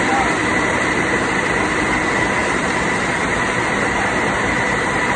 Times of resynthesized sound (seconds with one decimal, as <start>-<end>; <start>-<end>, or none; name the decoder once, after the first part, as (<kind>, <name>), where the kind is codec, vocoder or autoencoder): 0.4-1.0 (vocoder, BigVGAN v2); 2.4-5.2